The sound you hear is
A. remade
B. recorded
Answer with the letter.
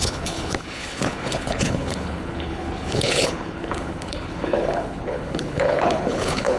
A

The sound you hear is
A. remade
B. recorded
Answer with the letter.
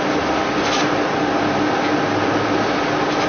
B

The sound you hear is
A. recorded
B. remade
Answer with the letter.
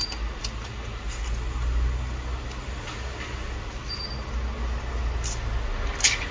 A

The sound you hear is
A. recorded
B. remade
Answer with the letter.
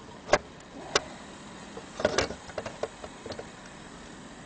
A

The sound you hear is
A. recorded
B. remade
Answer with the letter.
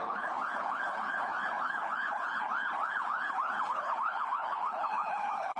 B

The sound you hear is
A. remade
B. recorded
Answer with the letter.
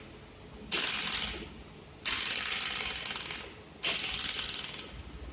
B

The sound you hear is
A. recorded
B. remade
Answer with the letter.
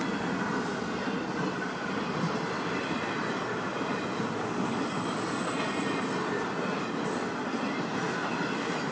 A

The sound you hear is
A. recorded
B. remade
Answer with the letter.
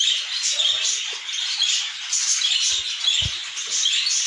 A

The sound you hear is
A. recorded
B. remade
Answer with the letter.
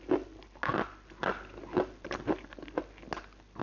A